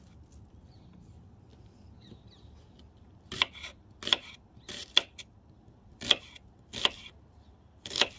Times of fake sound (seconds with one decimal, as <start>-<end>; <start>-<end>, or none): none